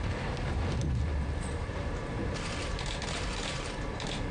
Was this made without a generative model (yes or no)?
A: no